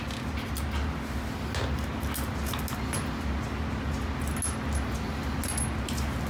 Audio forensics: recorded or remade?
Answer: recorded